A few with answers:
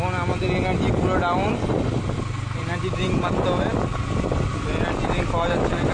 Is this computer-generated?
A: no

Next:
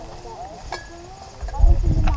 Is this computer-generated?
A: no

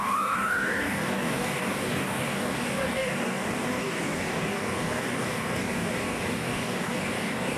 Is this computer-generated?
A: yes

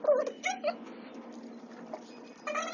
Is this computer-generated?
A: no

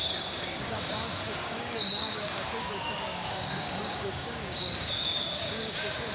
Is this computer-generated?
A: yes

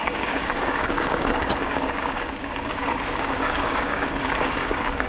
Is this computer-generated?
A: yes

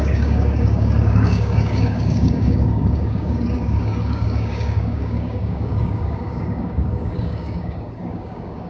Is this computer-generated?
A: yes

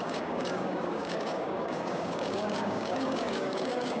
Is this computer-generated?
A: yes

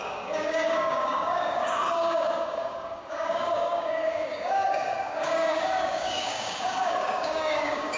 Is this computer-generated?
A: yes